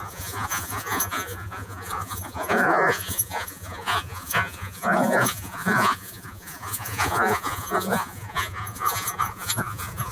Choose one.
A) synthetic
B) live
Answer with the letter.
A